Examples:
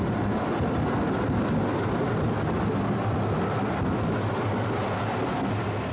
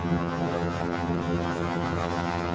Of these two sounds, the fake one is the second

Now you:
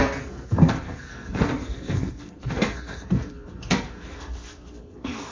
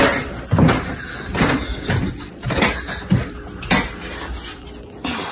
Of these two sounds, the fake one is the first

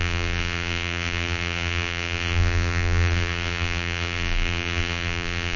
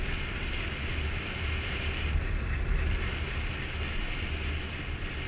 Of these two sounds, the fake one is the first